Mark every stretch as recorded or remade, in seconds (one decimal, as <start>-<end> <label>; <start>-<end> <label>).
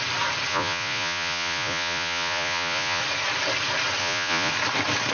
0.0-0.5 recorded; 0.5-3.0 remade; 3.0-4.0 recorded; 4.0-4.5 remade; 4.5-5.1 recorded